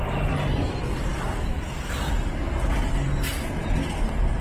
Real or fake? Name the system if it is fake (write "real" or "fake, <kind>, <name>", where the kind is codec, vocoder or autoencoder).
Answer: real